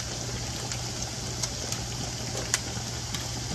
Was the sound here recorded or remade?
recorded